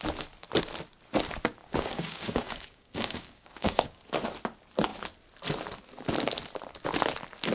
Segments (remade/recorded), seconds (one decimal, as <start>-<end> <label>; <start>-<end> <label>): 0.0-1.6 recorded; 1.6-4.0 remade; 4.0-7.5 recorded